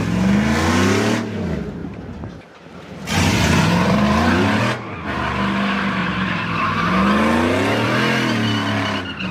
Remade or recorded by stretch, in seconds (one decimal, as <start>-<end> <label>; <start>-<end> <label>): 0.0-1.8 recorded; 1.8-4.6 remade; 4.6-6.0 recorded; 6.0-6.5 remade; 6.5-9.3 recorded

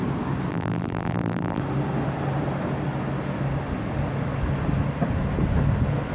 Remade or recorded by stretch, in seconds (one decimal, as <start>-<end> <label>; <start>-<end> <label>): 0.0-0.5 recorded; 0.5-1.6 remade; 1.6-6.1 recorded

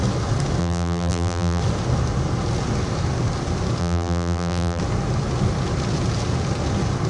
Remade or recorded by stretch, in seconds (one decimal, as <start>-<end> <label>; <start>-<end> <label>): 0.0-0.6 recorded; 0.6-1.6 remade; 1.6-3.8 recorded; 3.8-4.8 remade; 4.8-7.1 recorded

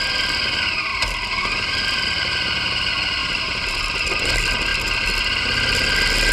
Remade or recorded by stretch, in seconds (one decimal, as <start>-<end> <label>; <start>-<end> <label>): 0.0-0.9 recorded; 0.9-1.8 remade; 1.8-3.2 recorded; 3.2-4.1 remade; 4.1-6.3 recorded

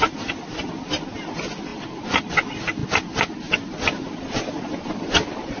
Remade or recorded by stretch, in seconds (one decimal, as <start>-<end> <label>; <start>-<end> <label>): 0.0-1.7 recorded; 1.7-2.3 remade; 2.3-5.6 recorded